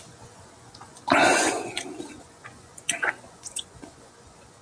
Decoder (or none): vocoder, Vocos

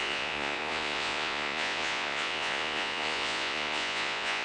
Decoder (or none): vocoder, Vocos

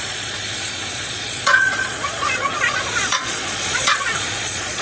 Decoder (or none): vocoder, Vocos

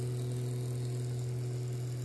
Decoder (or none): none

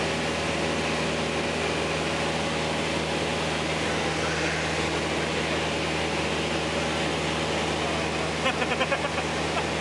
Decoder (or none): none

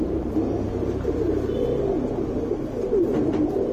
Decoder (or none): none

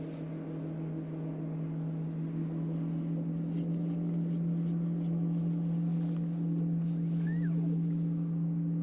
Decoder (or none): none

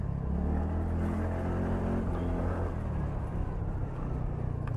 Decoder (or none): none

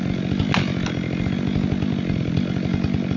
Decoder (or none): none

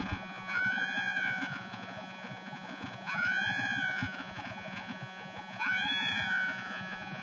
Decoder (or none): vocoder, Vocos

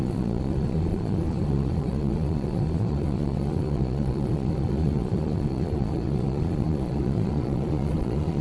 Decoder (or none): vocoder, Vocos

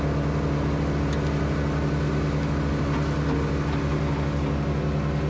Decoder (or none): none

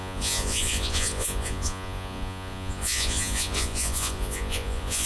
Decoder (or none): vocoder, Vocos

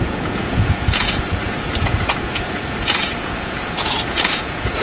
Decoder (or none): vocoder, Vocos